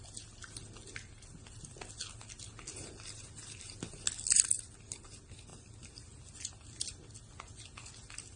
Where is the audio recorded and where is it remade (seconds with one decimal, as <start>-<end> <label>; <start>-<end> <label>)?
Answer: 0.0-5.5 recorded; 5.5-6.4 remade; 6.4-8.4 recorded